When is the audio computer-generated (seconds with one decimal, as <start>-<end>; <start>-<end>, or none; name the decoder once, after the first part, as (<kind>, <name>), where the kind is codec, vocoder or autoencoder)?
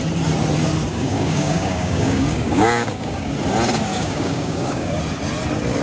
0.9-3.3 (codec, DAC); 3.9-5.0